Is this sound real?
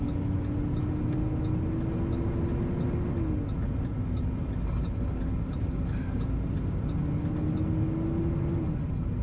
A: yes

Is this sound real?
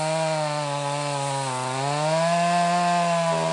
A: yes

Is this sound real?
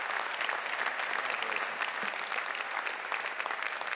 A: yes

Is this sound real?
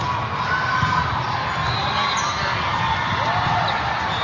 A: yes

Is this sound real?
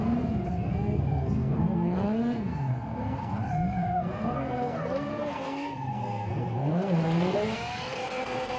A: no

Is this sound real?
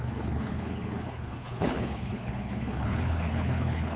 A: no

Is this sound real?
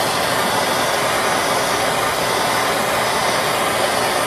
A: yes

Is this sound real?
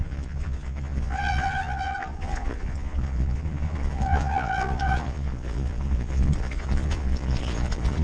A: no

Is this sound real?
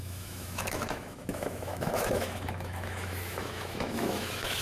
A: no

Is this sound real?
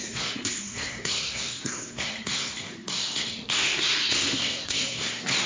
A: no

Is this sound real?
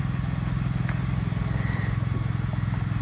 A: yes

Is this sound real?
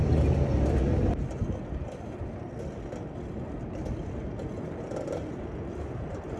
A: yes